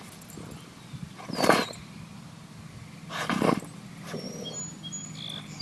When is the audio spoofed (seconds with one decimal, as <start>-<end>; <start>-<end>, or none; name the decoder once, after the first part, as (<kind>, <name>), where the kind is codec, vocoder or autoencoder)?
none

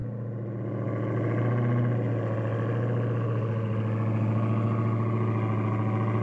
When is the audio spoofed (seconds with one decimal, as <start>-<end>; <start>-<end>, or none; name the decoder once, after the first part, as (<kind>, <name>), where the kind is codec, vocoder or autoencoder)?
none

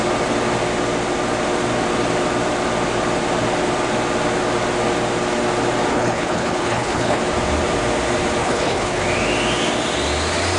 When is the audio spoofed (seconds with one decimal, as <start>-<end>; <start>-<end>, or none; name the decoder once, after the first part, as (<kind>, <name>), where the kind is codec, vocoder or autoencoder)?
5.9-7.2 (codec, HILCodec); 8.4-9.0